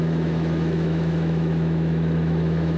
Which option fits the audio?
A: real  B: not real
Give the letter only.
B